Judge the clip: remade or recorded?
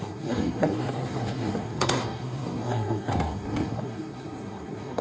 remade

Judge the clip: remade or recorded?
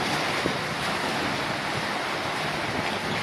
recorded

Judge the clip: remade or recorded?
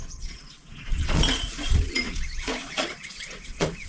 remade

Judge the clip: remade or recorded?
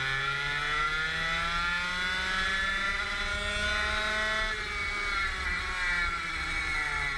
recorded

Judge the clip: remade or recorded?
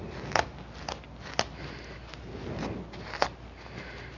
recorded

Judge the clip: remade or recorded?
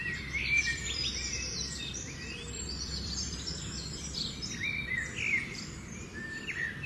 remade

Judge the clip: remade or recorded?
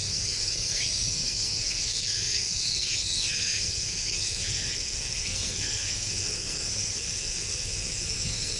remade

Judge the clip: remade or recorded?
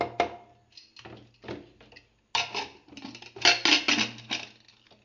recorded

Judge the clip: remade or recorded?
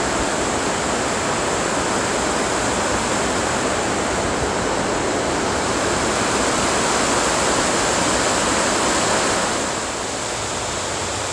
recorded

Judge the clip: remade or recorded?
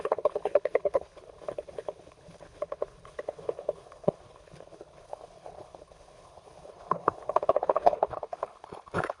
remade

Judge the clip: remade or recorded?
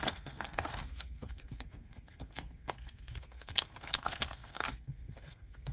remade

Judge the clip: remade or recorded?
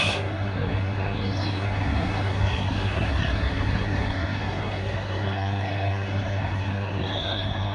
remade